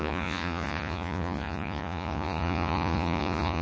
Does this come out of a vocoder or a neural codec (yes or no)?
yes